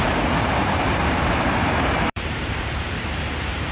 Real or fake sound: fake